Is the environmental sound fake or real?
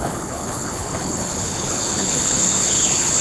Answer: fake